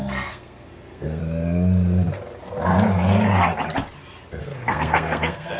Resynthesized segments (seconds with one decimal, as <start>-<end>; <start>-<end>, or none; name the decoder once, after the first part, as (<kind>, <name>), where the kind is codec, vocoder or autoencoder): 0.0-1.2 (codec, SNAC); 4.4-5.6

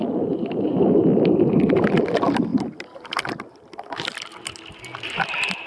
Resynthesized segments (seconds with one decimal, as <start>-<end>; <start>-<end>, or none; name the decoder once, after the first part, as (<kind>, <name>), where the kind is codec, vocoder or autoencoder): none